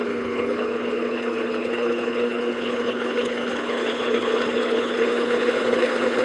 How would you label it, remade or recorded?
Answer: remade